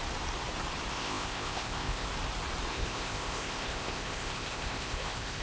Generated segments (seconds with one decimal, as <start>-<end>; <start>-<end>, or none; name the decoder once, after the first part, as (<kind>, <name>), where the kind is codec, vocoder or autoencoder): 0.9-2.1 (codec, ZipCodec); 2.7-5.4